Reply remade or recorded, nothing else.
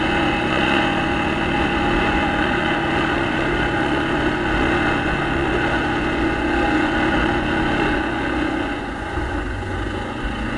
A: remade